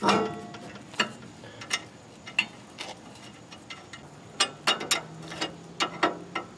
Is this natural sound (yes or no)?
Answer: yes